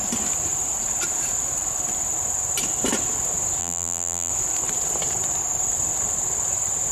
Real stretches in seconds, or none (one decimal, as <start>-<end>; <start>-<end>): 0.0-3.6; 4.3-6.9